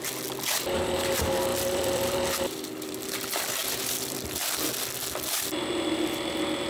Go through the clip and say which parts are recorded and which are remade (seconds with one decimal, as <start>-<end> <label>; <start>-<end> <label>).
0.0-1.5 recorded; 1.5-3.0 remade; 3.0-3.6 recorded; 3.6-4.7 remade; 4.7-6.7 recorded